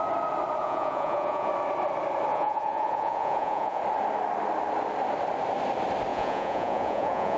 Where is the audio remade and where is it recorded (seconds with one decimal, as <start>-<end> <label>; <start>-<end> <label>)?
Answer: 0.0-0.6 recorded; 0.6-1.5 remade; 1.5-2.3 recorded; 2.3-3.8 remade; 3.8-6.1 recorded; 6.1-7.4 remade

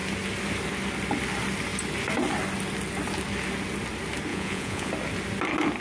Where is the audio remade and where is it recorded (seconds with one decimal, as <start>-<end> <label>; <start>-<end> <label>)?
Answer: 0.0-4.3 recorded; 4.3-4.9 remade; 4.9-5.8 recorded

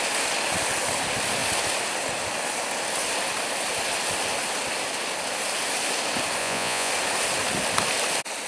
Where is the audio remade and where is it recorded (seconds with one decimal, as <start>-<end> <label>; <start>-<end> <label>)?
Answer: 0.0-6.4 recorded; 6.4-6.9 remade; 6.9-8.5 recorded

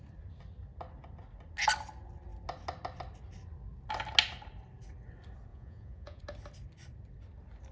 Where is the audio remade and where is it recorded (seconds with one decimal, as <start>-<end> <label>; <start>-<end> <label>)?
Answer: 0.0-5.5 recorded; 5.5-6.2 remade; 6.2-7.7 recorded

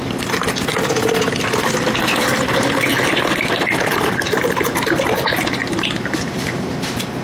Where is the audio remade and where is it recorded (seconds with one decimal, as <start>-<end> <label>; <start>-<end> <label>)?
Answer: 0.0-5.6 recorded; 5.6-6.7 remade; 6.7-7.2 recorded

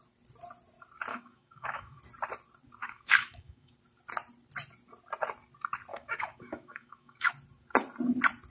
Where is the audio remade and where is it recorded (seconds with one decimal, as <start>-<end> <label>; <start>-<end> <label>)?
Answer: 0.0-1.1 recorded; 1.1-2.0 remade; 2.0-2.8 recorded; 2.8-3.7 remade; 3.7-5.9 recorded; 5.9-7.3 remade; 7.3-8.5 recorded